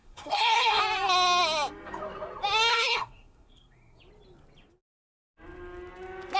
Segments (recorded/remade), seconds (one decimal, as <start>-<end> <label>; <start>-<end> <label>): 0.0-0.8 remade; 0.8-2.7 recorded; 2.7-4.0 remade; 4.0-6.4 recorded